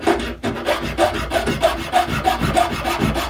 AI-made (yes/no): no